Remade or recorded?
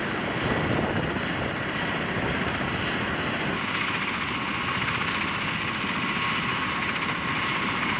recorded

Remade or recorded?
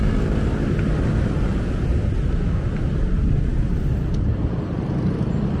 recorded